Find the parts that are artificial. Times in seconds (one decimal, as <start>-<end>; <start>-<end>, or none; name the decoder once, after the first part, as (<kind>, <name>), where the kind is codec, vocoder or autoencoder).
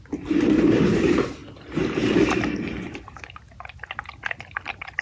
none